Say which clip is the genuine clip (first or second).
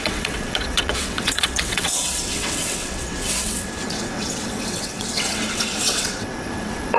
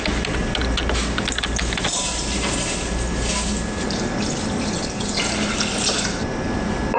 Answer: second